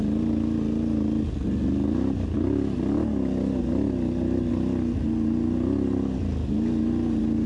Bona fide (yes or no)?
yes